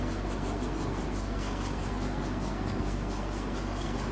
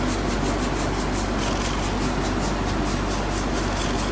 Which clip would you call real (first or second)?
second